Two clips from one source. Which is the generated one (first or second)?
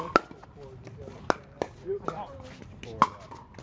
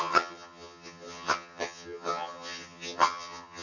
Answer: second